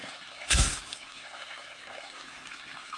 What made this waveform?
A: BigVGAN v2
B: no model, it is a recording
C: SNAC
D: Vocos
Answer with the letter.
C